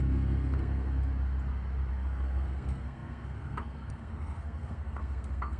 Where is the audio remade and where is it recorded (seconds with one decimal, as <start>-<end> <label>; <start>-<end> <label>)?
0.0-1.1 remade; 1.1-1.9 recorded; 1.9-5.6 remade